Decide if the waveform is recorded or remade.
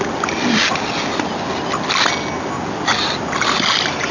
recorded